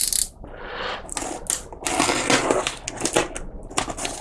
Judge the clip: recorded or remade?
recorded